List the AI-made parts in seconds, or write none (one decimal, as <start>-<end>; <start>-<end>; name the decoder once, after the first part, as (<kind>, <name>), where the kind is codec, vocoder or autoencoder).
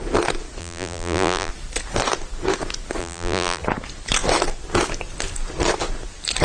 0.6-1.5 (vocoder, BigVGAN v2); 3.0-3.6